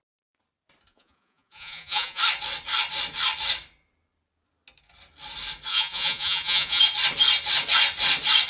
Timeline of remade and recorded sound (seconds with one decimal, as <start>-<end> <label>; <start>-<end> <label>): 0.0-0.9 recorded; 0.9-2.2 remade; 2.2-5.7 recorded; 5.7-6.8 remade; 6.8-8.5 recorded